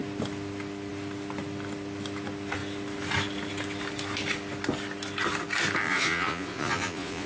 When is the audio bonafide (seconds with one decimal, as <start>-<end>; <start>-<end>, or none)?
0.0-5.9